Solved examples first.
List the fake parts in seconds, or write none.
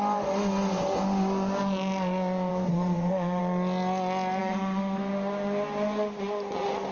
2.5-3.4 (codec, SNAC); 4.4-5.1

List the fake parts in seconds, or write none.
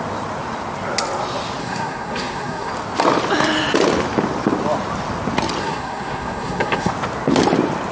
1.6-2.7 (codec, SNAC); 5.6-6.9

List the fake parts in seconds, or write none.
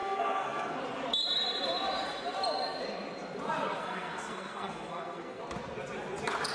0.0-0.8 (codec, SNAC); 3.8-5.4